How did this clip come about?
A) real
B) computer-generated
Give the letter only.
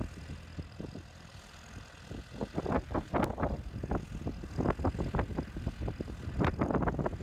A